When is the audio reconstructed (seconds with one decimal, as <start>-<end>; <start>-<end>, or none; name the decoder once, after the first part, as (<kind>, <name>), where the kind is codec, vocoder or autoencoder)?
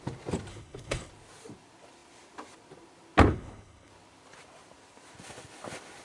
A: 0.5-1.1 (codec, HILCodec); 3.3-3.9